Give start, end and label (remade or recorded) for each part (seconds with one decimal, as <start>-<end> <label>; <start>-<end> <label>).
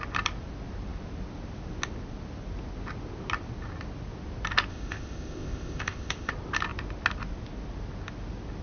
0.0-4.7 recorded; 4.7-6.3 remade; 6.3-8.6 recorded